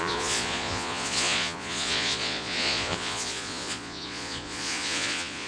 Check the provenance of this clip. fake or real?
fake